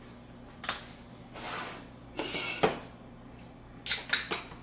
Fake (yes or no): no